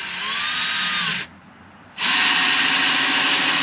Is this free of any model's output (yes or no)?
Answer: yes